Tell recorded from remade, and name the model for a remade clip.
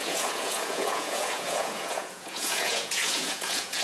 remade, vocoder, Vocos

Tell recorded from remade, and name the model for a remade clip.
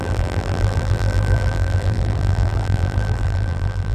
remade, vocoder, BigVGAN v2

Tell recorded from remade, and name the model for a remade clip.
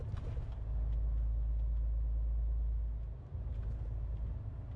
recorded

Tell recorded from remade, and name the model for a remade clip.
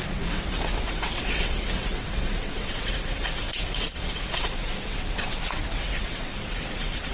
remade, vocoder, WaveNeXt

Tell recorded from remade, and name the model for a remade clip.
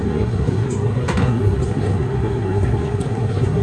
remade, codec, SNAC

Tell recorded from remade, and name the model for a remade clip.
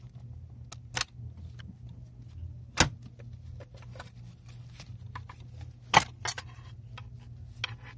recorded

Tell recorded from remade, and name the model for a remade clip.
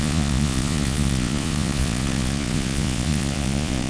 remade, vocoder, Vocos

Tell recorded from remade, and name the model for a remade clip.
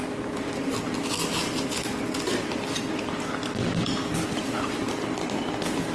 recorded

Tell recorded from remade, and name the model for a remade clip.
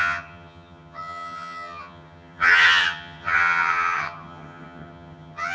remade, vocoder, HiFi-GAN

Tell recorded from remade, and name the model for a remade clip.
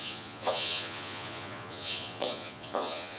remade, vocoder, Vocos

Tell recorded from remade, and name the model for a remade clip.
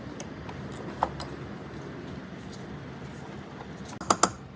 recorded